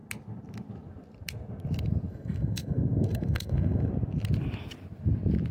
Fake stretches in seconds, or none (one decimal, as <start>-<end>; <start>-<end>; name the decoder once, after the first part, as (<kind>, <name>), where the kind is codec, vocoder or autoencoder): 2.1-3.9 (codec, SNAC)